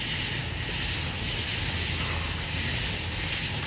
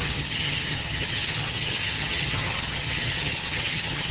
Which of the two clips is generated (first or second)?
second